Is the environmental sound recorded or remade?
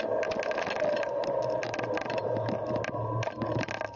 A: recorded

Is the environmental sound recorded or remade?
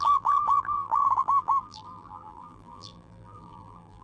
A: remade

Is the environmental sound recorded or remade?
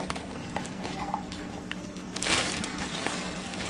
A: remade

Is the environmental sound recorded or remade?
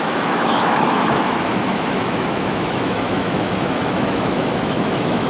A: remade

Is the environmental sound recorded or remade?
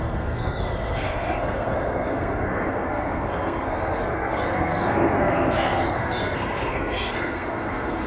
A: remade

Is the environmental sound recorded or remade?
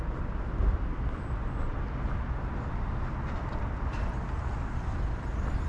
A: recorded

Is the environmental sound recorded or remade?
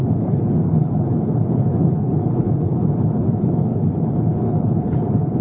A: remade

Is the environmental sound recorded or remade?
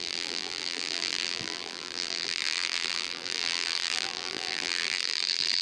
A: remade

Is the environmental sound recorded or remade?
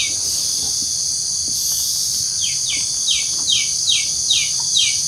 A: recorded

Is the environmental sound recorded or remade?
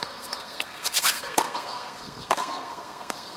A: remade